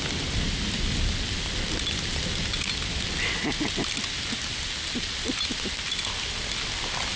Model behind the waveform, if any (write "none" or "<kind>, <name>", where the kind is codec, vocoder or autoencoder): none